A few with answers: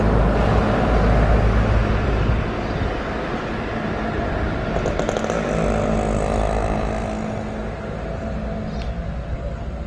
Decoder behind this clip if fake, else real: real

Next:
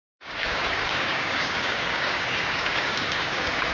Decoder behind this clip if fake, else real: fake, codec, DAC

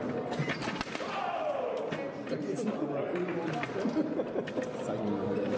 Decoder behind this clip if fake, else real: real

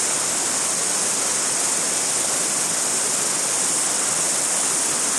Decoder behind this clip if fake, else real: real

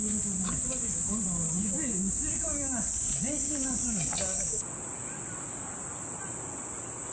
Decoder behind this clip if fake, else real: real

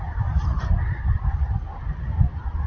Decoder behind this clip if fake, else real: fake, vocoder, BigVGAN v2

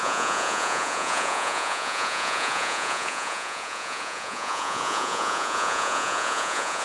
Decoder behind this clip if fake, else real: fake, vocoder, Vocos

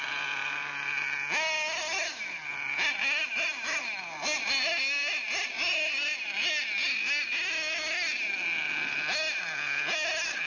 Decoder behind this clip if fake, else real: real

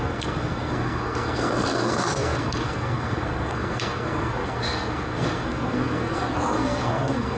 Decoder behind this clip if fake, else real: fake, codec, SNAC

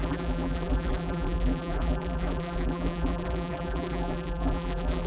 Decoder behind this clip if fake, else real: fake, vocoder, BigVGAN v2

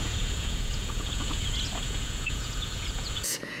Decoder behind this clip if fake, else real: fake, vocoder, Vocos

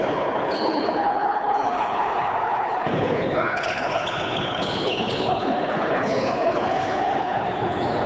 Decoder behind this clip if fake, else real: fake, codec, HILCodec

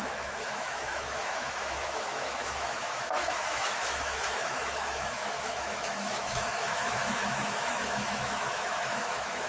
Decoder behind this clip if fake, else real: fake, autoencoder, DAC-VAE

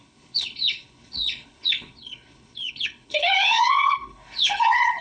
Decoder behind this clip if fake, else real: fake, codec, HILCodec